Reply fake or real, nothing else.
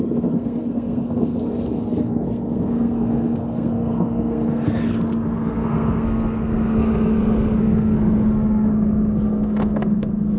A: fake